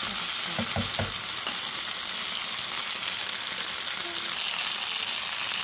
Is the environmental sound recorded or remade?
recorded